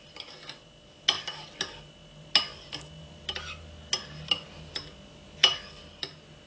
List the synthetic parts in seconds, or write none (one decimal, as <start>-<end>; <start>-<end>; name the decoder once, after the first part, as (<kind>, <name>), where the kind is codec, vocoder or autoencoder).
none